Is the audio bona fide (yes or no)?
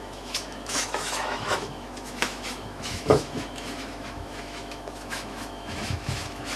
no